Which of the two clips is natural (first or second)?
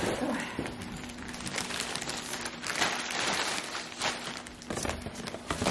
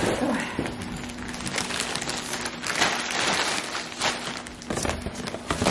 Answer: second